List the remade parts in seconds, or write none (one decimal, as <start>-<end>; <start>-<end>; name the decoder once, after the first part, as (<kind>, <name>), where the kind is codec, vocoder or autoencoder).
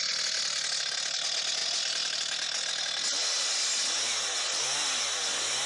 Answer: none